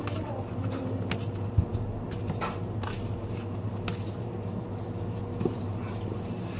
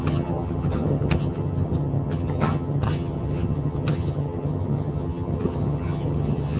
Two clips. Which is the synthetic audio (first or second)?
second